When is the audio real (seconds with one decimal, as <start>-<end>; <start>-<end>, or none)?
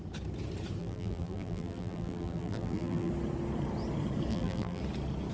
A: 0.0-0.8; 3.1-4.3; 4.8-5.3